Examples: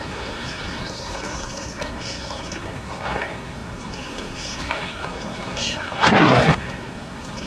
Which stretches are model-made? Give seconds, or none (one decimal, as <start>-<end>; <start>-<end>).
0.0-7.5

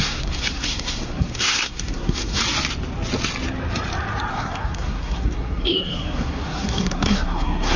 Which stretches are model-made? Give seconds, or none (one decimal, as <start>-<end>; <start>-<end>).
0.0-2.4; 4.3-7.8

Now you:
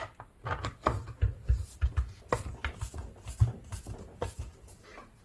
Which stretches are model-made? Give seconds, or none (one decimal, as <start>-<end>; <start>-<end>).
none

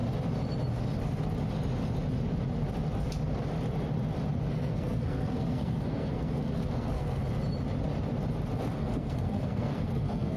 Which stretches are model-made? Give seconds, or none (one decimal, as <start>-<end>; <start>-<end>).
4.5-7.2; 8.8-10.4

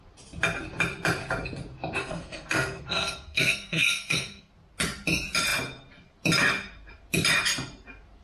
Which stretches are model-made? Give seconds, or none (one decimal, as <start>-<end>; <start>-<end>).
2.0-4.5

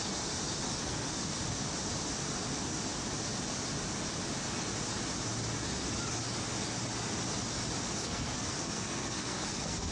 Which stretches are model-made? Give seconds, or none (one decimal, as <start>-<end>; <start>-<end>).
0.8-1.4; 8.0-9.9